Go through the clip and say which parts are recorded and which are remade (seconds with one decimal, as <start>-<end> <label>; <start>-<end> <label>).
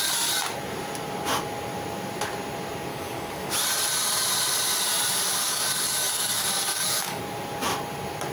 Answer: 0.0-2.9 recorded; 2.9-3.5 remade; 3.5-5.4 recorded; 5.4-7.2 remade; 7.2-8.3 recorded